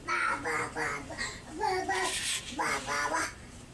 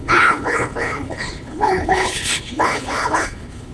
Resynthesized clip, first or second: second